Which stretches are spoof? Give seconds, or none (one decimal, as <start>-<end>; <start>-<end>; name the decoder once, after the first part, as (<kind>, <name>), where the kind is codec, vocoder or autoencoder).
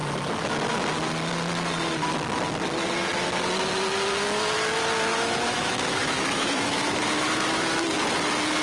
5.1-7.9 (autoencoder, DAC-VAE)